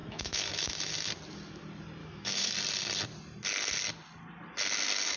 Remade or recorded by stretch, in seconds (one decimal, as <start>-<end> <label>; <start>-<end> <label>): 0.0-0.7 remade; 0.7-2.0 recorded; 2.0-2.5 remade; 2.5-5.2 recorded